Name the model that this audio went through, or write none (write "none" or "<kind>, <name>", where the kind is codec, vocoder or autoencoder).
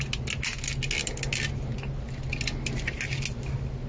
none